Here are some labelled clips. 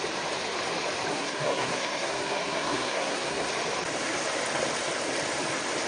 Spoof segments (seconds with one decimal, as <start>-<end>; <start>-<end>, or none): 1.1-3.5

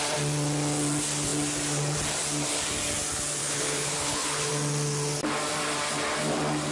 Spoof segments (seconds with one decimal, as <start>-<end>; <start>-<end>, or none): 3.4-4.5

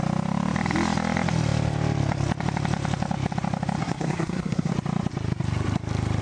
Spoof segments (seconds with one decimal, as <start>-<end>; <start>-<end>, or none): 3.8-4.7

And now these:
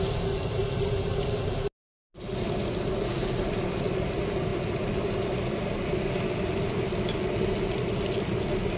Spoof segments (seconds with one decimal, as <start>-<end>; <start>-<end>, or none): 4.5-6.8

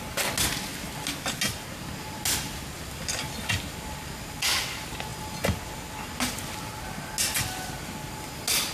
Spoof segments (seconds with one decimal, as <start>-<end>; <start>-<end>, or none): none

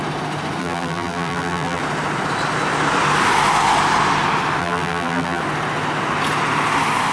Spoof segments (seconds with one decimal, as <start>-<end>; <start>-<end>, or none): 0.6-1.8; 4.6-5.4

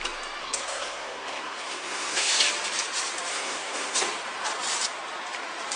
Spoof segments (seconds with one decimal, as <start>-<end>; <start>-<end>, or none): 0.4-2.4; 3.3-4.0

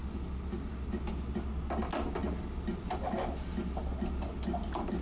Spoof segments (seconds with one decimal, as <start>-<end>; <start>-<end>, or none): none